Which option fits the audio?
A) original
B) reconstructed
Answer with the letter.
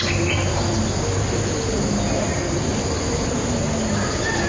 A